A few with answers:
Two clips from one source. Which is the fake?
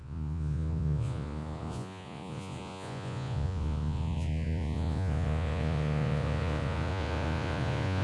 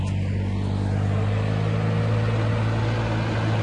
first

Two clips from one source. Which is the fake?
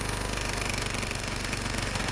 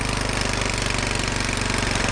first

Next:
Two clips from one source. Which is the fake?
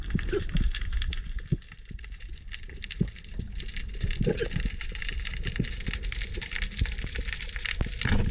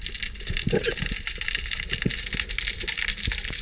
first